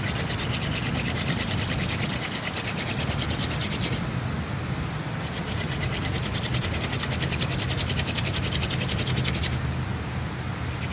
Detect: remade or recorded recorded